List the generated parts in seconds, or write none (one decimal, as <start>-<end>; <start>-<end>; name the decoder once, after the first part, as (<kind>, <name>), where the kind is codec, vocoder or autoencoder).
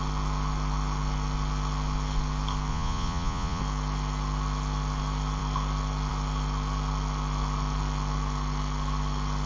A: 2.7-3.6 (vocoder, Vocos)